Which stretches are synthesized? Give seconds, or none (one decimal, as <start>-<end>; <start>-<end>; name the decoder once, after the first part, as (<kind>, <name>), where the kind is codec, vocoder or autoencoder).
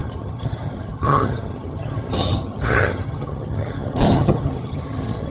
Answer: 0.0-5.3 (vocoder, HiFi-GAN)